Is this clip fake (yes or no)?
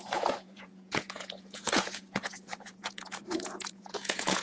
yes